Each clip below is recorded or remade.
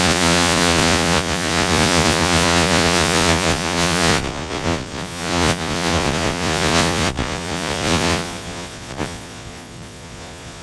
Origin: remade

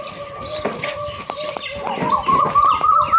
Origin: recorded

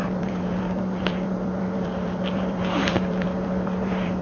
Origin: remade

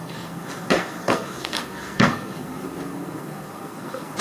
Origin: remade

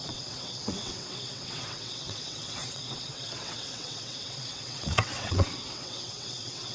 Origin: remade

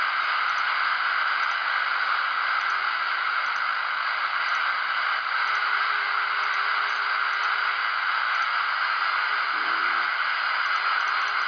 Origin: recorded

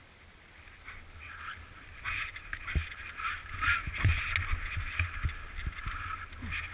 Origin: recorded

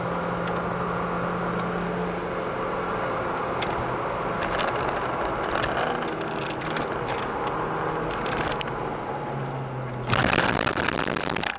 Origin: recorded